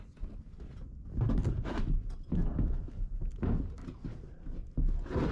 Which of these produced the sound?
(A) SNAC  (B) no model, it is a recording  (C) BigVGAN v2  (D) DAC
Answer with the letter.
B